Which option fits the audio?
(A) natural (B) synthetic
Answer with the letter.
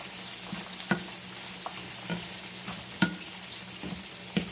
A